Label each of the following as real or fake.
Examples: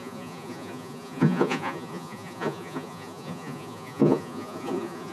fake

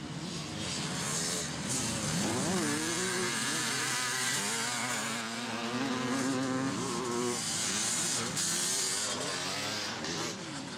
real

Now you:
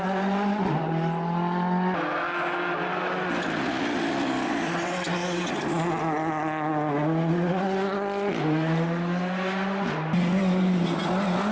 real